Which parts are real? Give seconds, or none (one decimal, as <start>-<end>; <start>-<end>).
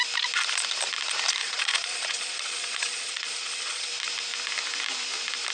0.0-1.4; 3.9-5.5